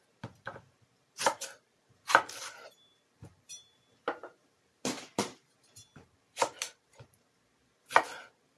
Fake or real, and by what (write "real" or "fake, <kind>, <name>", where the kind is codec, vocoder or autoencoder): fake, vocoder, BigVGAN v2